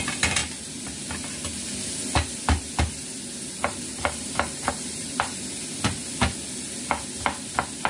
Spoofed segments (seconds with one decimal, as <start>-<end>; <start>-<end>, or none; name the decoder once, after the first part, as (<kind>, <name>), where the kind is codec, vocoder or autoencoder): 3.9-5.4 (vocoder, BigVGAN v2)